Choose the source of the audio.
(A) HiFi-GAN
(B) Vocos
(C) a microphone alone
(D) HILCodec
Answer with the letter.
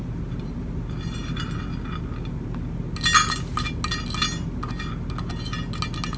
C